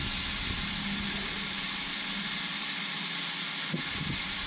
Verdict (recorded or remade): recorded